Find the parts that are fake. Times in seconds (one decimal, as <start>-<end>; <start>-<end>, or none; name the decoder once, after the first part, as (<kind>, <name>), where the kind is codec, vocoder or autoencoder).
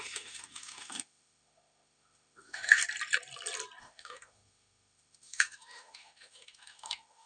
0.0-2.8 (autoencoder, DAC-VAE); 3.8-7.3